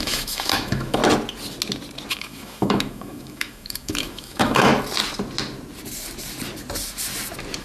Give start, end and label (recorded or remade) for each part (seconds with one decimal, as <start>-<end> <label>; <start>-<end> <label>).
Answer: 0.0-1.0 remade; 1.0-2.1 recorded; 2.1-4.7 remade; 4.7-7.6 recorded